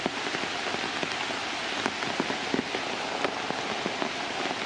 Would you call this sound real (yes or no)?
yes